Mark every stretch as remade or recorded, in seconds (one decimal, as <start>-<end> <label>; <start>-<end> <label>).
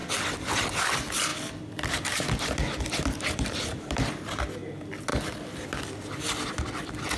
0.0-0.7 remade; 0.7-5.1 recorded; 5.1-6.5 remade; 6.5-7.2 recorded